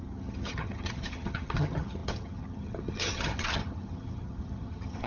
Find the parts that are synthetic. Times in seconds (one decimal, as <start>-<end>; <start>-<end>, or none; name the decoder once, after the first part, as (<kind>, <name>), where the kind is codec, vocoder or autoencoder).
0.0-5.1 (vocoder, HiFi-GAN)